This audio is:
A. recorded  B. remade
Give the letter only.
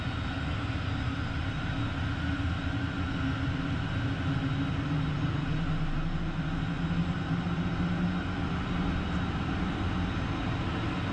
A